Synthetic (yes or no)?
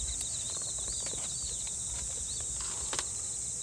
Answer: no